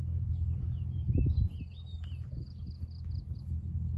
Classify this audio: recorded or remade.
remade